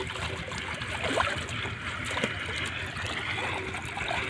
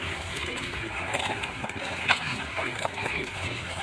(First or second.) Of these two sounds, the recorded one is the first